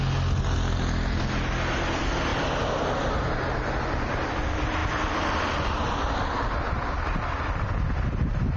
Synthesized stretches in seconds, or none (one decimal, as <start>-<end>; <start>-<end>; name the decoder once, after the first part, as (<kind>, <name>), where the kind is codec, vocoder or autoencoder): none